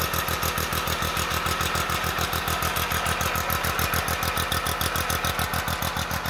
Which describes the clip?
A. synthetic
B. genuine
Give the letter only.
B